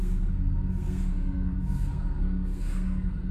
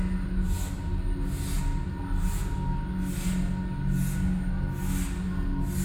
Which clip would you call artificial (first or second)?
first